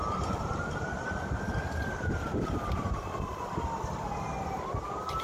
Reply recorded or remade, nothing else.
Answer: recorded